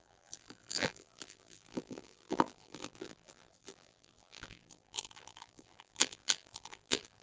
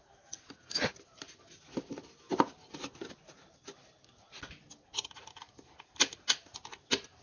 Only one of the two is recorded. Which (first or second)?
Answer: second